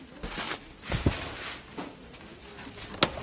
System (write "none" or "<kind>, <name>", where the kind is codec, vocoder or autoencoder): none